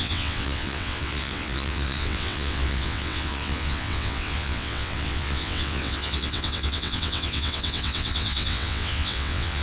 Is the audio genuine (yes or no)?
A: no